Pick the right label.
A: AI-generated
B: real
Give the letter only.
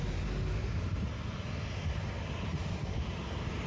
B